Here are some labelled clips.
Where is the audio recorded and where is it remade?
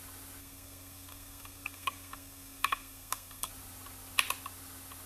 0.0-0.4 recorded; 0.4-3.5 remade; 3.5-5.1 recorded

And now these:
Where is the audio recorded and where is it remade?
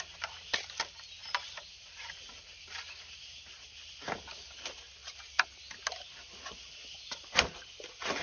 0.0-8.2 recorded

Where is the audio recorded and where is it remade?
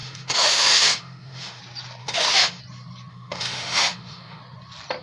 0.0-1.6 remade; 1.6-2.0 recorded; 2.0-2.6 remade; 2.6-3.1 recorded; 3.1-4.4 remade; 4.4-5.0 recorded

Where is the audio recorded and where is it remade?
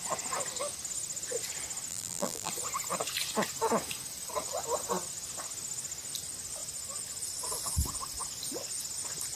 0.0-1.9 recorded; 1.9-2.5 remade; 2.5-9.4 recorded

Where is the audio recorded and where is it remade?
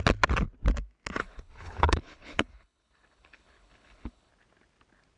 0.0-1.2 recorded; 1.2-4.3 remade; 4.3-5.2 recorded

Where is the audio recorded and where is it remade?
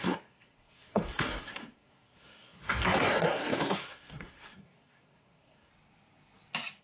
0.0-5.7 remade; 5.7-6.8 recorded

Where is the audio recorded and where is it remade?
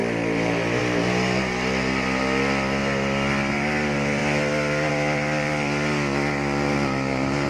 0.0-7.5 recorded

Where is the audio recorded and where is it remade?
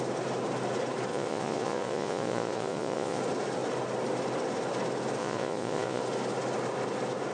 0.0-1.1 recorded; 1.1-3.2 remade; 3.2-5.2 recorded; 5.2-6.0 remade; 6.0-7.3 recorded